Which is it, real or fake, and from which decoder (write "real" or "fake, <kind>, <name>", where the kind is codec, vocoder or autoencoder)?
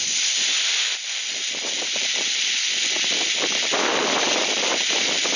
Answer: real